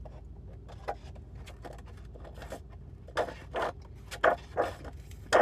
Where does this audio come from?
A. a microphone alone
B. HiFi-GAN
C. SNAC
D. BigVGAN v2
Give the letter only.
A